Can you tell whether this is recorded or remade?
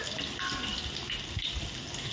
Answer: recorded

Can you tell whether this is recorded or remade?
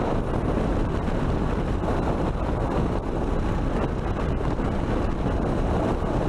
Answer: recorded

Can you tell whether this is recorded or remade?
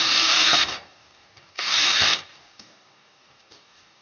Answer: remade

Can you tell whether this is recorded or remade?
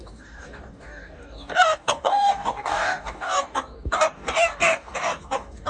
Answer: remade